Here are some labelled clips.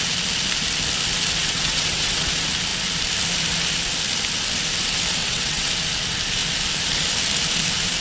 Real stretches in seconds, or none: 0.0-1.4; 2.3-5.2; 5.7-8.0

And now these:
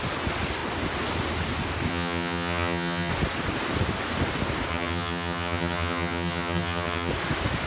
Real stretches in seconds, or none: 0.0-1.9; 3.1-4.7; 7.1-7.7

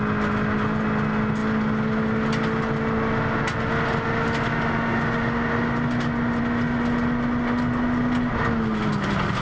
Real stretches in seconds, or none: 0.0-9.4

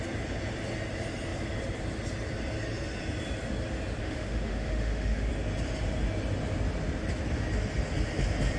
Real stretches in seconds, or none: 0.0-4.0; 5.3-8.6

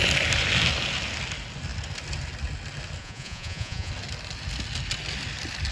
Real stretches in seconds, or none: 0.0-3.0; 3.9-5.7